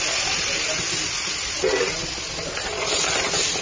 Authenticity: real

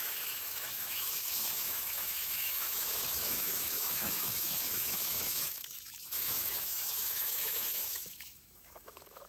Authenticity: fake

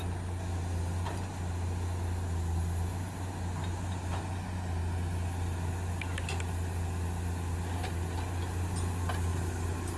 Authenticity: real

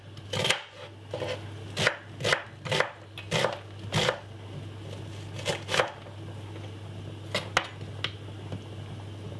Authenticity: real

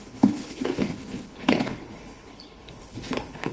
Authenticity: fake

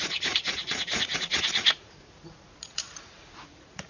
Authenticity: fake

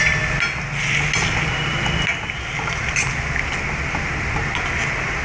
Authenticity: real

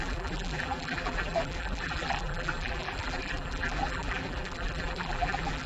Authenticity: fake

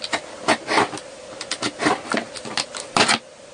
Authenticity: real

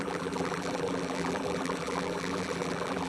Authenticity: fake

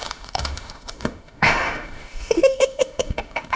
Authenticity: fake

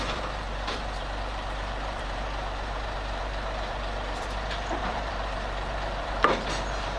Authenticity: fake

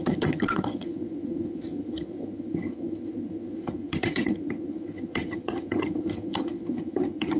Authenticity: fake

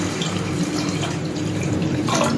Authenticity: fake